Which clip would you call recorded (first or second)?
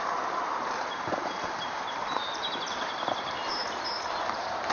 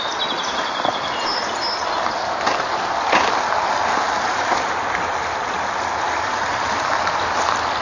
second